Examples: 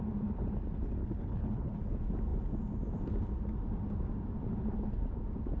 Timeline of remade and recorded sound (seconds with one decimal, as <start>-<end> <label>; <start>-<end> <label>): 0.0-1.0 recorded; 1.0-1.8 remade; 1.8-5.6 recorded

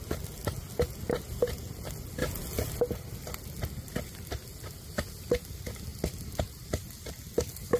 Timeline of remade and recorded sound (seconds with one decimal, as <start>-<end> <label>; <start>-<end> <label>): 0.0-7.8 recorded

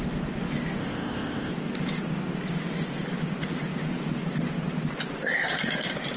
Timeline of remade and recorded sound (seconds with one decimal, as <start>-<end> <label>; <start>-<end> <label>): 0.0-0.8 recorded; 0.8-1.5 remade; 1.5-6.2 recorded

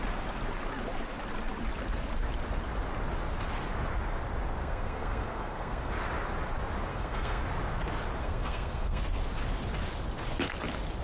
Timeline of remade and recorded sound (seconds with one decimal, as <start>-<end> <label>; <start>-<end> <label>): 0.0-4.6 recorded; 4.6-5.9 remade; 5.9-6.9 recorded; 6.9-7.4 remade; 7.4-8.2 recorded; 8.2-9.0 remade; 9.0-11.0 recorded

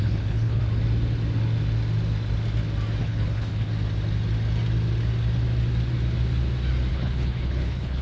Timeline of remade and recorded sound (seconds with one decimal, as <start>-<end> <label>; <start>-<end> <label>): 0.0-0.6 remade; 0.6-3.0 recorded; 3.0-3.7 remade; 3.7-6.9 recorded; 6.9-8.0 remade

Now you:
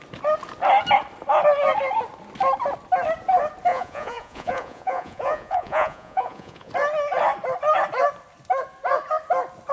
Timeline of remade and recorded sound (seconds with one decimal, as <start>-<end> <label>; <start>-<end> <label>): 0.0-3.7 recorded; 3.7-6.7 remade; 6.7-9.7 recorded

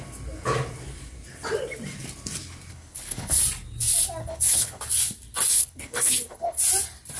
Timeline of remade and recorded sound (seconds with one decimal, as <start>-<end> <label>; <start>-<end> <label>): 0.0-2.7 recorded; 2.7-3.4 remade; 3.4-4.2 recorded; 4.2-4.8 remade; 4.8-5.5 recorded; 5.5-6.6 remade; 6.6-7.2 recorded

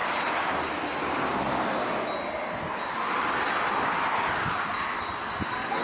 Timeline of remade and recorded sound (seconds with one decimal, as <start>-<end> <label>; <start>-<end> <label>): 0.0-5.8 recorded